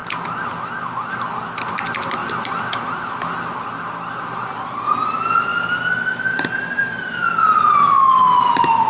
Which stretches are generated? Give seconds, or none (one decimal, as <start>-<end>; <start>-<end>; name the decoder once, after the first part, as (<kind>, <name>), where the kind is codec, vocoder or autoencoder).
none